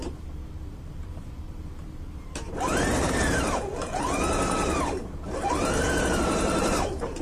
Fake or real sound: fake